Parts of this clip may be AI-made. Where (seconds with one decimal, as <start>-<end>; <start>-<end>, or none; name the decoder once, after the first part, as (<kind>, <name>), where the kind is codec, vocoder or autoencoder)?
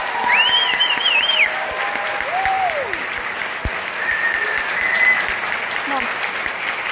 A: none